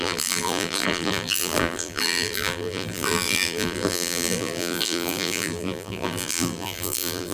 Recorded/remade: remade